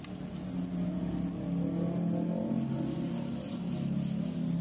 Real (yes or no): yes